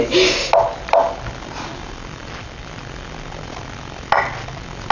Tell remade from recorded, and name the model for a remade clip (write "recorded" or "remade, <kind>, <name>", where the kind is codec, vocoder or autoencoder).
recorded